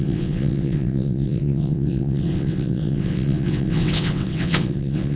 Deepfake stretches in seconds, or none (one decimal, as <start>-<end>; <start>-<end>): 0.0-5.2